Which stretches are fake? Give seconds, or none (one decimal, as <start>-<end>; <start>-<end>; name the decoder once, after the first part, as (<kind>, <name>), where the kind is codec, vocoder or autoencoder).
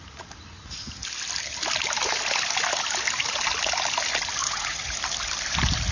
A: 4.4-5.0 (vocoder, Vocos)